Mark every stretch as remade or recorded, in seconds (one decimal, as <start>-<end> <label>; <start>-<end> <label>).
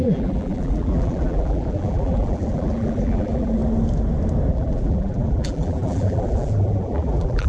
0.0-3.6 remade; 3.6-4.5 recorded; 4.5-7.5 remade